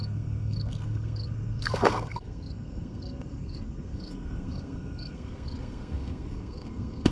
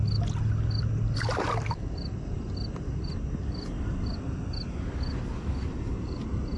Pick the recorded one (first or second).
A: second